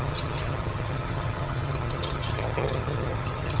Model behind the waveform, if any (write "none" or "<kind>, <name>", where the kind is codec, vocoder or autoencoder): vocoder, HiFi-GAN